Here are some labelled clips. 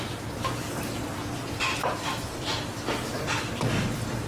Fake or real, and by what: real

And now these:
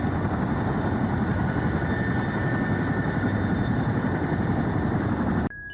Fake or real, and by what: real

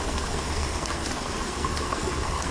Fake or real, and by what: fake, codec, SNAC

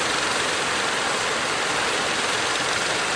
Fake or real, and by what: real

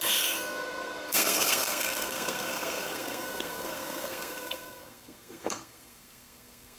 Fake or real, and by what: fake, codec, SNAC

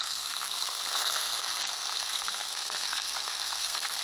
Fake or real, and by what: fake, codec, SNAC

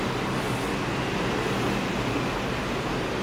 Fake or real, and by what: real